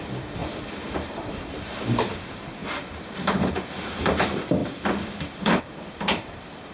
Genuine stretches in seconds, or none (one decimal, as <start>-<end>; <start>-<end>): none